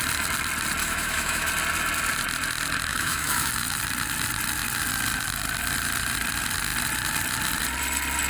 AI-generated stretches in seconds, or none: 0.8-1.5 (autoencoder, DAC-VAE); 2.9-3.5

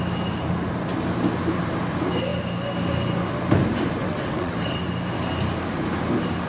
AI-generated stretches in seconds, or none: 4.0-4.8 (vocoder, WaveNeXt)

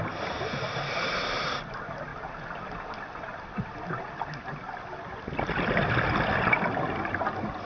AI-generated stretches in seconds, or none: none

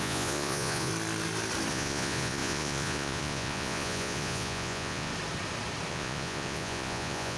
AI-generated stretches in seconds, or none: 0.0-0.9 (vocoder, Vocos); 1.7-5.1; 5.9-7.4

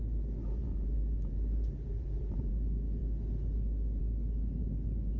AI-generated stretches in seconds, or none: 0.6-2.5 (vocoder, BigVGAN v2)

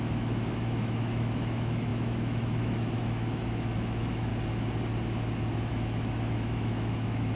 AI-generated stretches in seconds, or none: 0.0-4.3 (autoencoder, DAC-VAE); 5.7-7.4

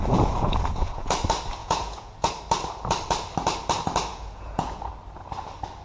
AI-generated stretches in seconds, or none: 0.0-1.1 (vocoder, Vocos); 1.6-2.3; 4.1-4.9

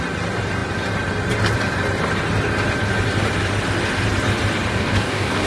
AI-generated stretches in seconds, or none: 4.7-5.5 (codec, DAC)